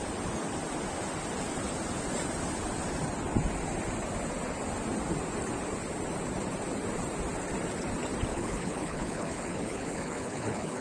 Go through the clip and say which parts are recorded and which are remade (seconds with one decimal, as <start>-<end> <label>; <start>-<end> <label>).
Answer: 0.0-8.3 recorded; 8.3-10.8 remade